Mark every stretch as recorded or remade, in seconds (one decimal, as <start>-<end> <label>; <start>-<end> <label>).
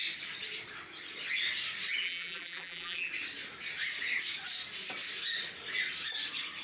0.0-2.0 recorded; 2.0-3.1 remade; 3.1-6.6 recorded